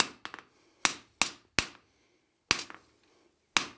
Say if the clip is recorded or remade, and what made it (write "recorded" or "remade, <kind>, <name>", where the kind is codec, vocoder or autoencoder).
recorded